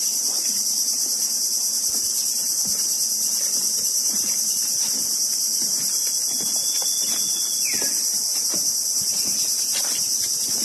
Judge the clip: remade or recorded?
recorded